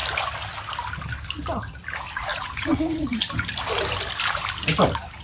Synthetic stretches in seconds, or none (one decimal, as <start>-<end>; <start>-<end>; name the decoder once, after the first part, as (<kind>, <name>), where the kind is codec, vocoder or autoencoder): 2.3-3.2 (vocoder, Vocos)